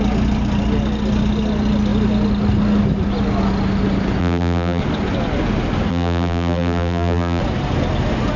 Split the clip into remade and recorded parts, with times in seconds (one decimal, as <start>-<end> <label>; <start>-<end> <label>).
0.0-4.2 recorded; 4.2-4.8 remade; 4.8-5.9 recorded; 5.9-7.4 remade; 7.4-8.4 recorded